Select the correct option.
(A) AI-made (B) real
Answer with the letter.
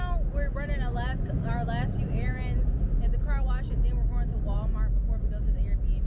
B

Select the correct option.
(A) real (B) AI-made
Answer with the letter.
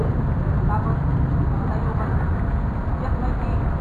A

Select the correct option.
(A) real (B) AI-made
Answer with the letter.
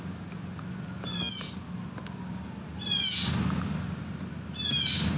A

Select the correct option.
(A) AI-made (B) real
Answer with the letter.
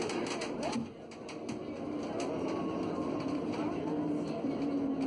B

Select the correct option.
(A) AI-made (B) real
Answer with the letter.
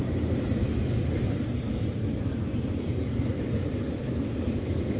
B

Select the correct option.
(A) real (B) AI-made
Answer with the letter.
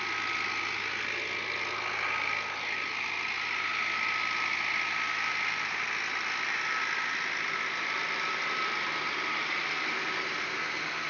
A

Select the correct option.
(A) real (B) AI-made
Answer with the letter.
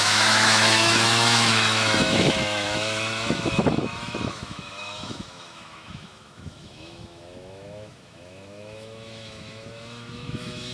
B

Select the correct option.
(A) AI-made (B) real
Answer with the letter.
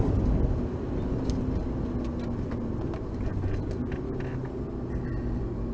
B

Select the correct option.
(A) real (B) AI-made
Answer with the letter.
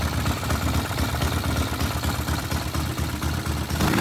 A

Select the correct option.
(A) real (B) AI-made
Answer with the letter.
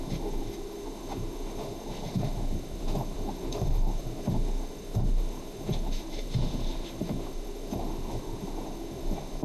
B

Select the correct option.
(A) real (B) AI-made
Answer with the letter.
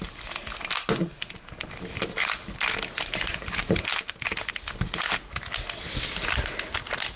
A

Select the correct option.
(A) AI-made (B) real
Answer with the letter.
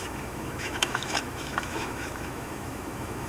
A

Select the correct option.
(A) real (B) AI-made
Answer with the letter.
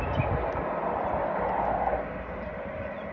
A